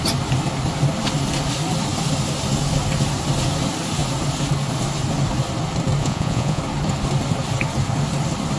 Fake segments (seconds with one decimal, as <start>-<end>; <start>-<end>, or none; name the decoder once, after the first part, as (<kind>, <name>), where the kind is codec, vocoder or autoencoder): 6.0-6.6 (vocoder, Vocos)